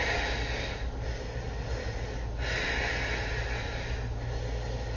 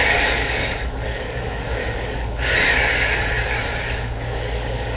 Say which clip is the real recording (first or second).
first